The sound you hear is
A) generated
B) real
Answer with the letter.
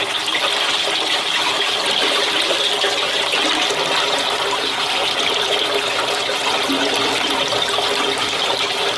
A